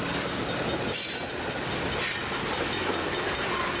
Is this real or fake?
real